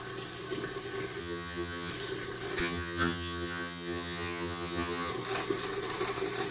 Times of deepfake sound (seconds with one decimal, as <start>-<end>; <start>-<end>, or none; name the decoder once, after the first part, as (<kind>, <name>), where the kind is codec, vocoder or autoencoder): 1.2-1.9 (vocoder, HiFi-GAN); 2.6-5.1